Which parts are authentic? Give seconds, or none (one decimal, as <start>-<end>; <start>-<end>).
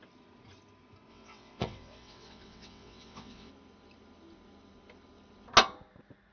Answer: 0.0-1.1; 3.5-6.3